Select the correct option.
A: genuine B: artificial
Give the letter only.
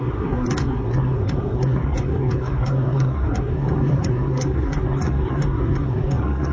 B